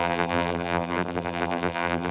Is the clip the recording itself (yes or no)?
no